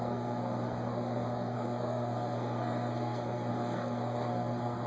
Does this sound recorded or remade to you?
remade